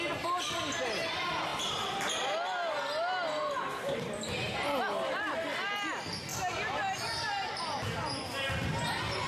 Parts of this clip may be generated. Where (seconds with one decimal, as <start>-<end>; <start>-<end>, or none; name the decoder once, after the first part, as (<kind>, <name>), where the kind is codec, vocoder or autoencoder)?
none